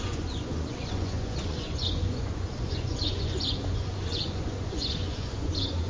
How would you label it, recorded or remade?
remade